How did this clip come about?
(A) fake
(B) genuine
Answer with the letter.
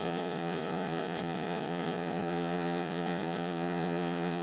A